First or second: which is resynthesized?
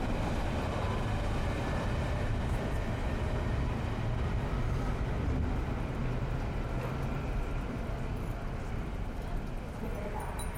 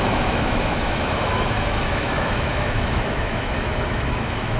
second